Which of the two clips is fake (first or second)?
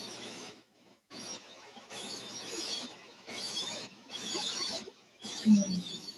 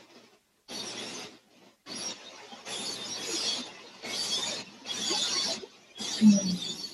first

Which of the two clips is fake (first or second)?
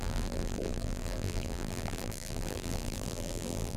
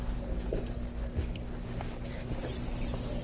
first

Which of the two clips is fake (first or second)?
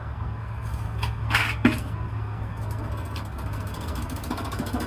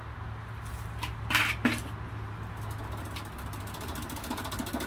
first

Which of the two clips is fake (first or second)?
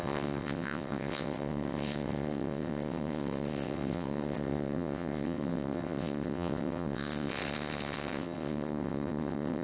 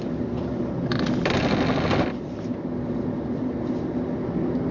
first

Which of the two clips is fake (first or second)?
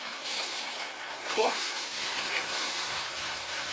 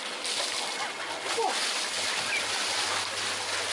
first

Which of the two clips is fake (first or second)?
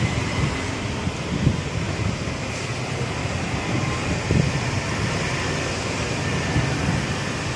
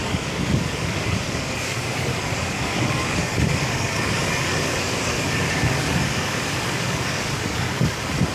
second